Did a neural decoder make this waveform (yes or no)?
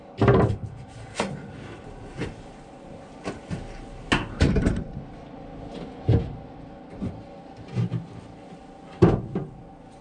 no